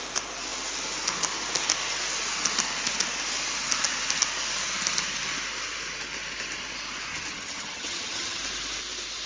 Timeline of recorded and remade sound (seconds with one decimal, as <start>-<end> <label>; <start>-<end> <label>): 0.0-7.1 recorded; 7.1-8.4 remade; 8.4-9.3 recorded